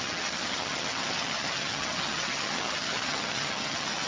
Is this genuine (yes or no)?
no